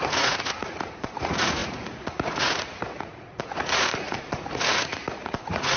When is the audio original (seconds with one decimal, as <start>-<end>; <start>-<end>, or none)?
none